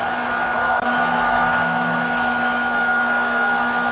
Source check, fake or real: fake